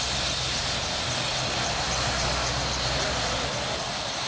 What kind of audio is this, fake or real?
real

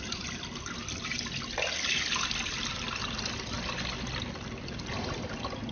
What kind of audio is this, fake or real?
real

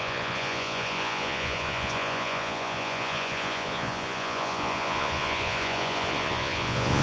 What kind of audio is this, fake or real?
fake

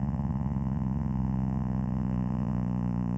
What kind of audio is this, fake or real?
fake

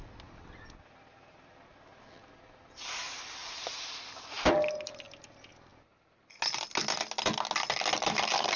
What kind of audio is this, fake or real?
real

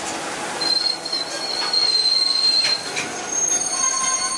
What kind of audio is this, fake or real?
real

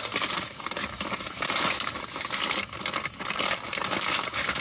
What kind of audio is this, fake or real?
real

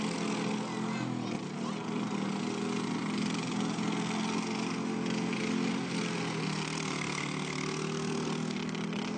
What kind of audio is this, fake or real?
real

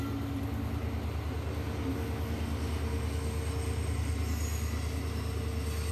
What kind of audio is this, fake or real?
real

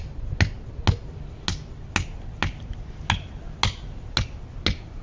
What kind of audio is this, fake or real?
real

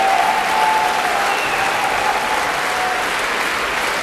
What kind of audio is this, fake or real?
real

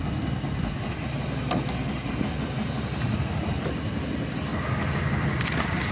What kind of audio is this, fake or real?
real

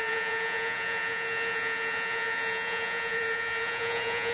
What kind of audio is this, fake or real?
fake